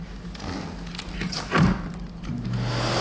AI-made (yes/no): no